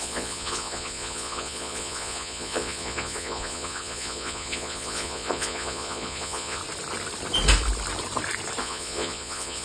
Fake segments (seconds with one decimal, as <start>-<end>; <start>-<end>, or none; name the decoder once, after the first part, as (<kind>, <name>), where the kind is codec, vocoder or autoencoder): 0.0-6.6 (vocoder, Vocos); 8.6-9.6